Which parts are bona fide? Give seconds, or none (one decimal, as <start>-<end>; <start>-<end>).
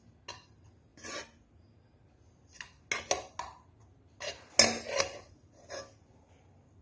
0.0-6.8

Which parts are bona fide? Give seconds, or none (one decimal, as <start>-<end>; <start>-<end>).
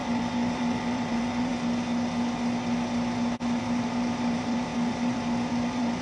1.5-3.6